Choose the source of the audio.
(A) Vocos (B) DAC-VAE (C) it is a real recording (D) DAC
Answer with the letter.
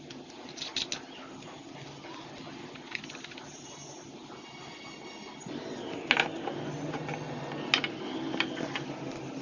C